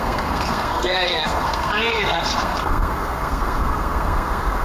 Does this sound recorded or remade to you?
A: remade